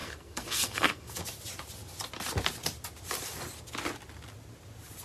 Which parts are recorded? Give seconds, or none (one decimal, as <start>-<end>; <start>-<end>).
1.2-5.0